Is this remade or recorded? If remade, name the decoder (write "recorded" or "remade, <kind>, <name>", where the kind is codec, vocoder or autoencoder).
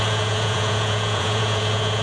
remade, vocoder, Vocos